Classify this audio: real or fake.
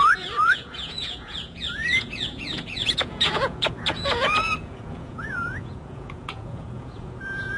fake